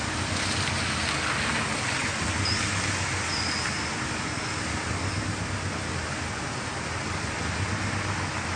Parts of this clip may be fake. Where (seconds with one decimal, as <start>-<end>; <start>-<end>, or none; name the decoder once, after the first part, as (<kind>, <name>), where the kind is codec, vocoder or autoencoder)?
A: none